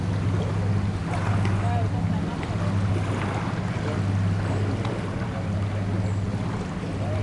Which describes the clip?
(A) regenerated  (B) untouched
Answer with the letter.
B